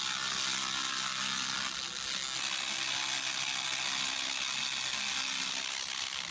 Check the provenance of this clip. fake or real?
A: real